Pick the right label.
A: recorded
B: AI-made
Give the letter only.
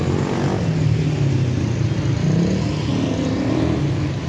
A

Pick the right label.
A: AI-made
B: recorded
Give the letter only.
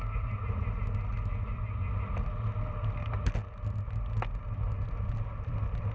B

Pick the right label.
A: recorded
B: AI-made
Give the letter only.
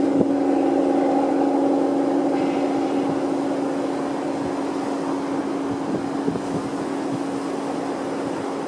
A